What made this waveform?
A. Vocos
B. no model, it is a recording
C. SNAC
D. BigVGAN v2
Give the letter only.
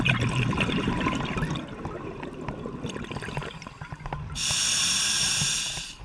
B